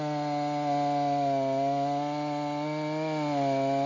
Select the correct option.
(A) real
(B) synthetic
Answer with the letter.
A